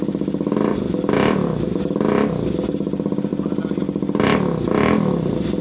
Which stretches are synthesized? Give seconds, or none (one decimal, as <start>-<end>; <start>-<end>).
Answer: none